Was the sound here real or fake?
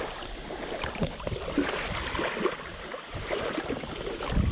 real